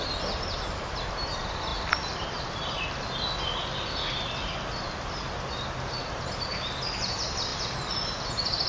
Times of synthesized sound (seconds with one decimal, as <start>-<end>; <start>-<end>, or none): 1.7-3.0